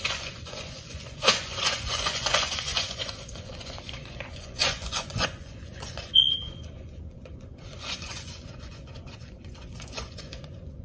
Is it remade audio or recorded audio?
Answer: remade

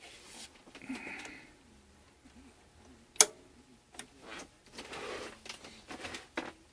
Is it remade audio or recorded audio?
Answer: recorded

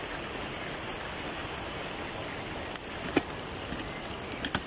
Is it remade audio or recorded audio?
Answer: recorded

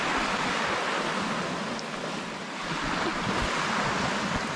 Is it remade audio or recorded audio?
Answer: recorded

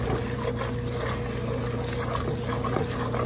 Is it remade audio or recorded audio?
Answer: recorded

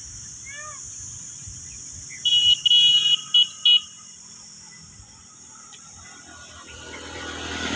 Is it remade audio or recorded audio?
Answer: recorded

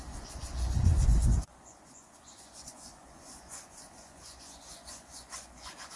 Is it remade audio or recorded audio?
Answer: remade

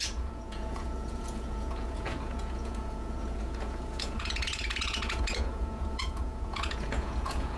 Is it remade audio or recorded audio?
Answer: remade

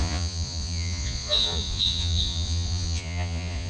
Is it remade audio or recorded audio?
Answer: remade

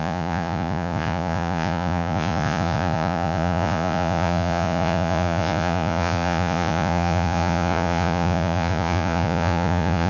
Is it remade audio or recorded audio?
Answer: remade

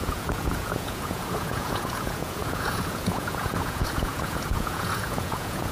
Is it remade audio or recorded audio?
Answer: remade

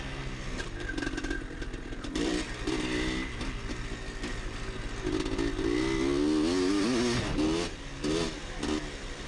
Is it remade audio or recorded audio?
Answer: recorded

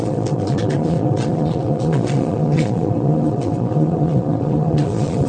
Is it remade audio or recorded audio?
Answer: remade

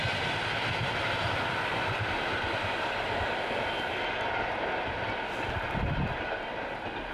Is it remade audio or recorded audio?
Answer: recorded